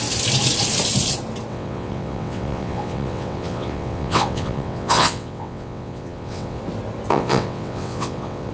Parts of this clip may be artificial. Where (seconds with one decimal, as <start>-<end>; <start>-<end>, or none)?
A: 1.5-6.6; 7.1-8.5